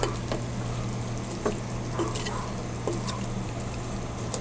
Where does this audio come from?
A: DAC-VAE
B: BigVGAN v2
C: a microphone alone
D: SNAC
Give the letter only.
C